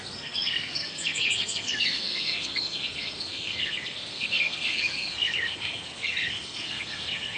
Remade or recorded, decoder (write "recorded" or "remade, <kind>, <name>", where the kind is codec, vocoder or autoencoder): remade, codec, SNAC